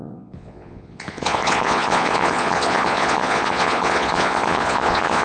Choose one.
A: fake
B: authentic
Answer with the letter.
A